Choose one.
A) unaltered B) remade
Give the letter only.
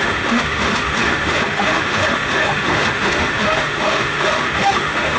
B